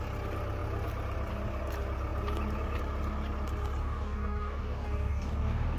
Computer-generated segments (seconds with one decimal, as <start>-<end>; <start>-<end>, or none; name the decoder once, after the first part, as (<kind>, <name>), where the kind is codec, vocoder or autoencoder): 3.8-5.8 (codec, DAC)